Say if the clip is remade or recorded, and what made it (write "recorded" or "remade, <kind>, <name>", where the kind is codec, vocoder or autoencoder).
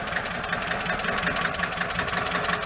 recorded